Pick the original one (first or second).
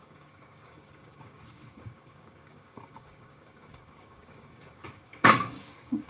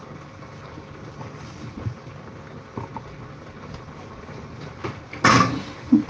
second